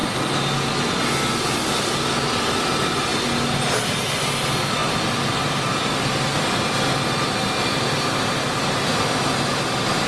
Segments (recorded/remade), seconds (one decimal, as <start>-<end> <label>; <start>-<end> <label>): 0.0-10.1 recorded